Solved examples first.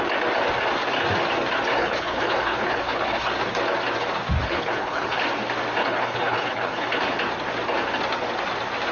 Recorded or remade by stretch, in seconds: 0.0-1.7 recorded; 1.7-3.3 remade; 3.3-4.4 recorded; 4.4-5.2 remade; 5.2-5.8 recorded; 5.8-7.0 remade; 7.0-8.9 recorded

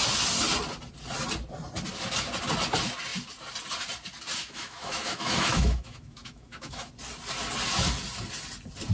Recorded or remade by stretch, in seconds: 0.0-4.3 recorded; 4.3-6.9 remade; 6.9-8.9 recorded

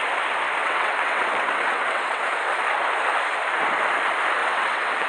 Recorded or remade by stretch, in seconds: 0.0-0.6 recorded; 0.6-2.3 remade; 2.3-4.4 recorded; 4.4-5.1 remade